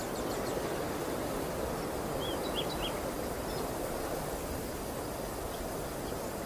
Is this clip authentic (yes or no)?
yes